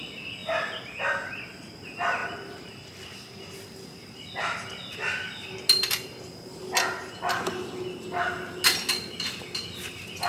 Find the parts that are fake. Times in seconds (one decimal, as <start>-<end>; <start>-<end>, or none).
none